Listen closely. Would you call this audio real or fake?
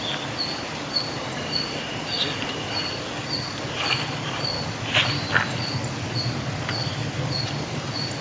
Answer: real